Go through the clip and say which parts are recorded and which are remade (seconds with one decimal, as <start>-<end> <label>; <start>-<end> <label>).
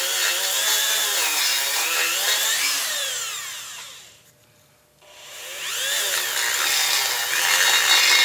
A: 0.0-1.5 recorded; 1.5-5.7 remade; 5.7-8.2 recorded